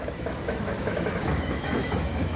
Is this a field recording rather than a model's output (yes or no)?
no